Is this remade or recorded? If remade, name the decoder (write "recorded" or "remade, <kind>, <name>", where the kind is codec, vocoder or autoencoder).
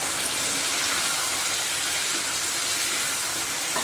recorded